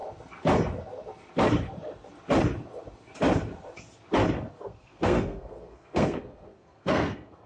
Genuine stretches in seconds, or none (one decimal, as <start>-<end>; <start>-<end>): 0.0-4.5